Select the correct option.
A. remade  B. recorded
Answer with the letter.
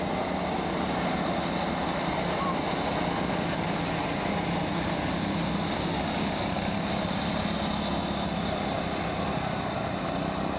B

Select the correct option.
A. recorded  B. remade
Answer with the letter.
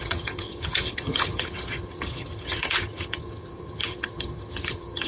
B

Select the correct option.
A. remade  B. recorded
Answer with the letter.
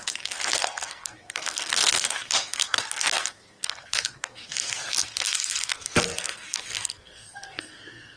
A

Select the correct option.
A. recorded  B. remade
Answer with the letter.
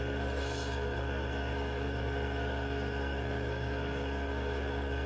B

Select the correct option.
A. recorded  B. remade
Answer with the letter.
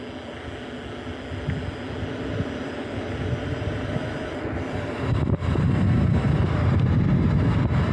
A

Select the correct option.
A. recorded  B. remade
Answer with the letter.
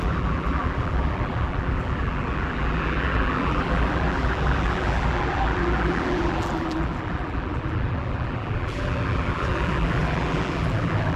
B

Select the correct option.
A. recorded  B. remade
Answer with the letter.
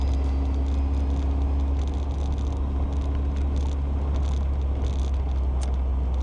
A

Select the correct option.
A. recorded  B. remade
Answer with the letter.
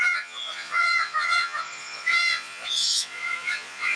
B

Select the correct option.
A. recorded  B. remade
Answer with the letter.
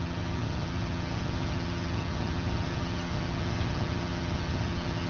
B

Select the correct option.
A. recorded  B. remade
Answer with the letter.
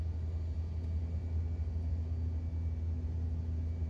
A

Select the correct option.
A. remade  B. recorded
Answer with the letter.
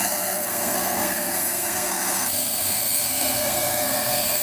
A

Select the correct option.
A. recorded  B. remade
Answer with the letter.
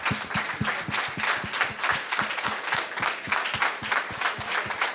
A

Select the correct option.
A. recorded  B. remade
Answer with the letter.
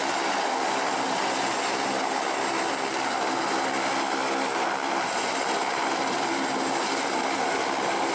A